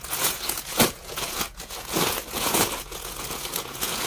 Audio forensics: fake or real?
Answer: fake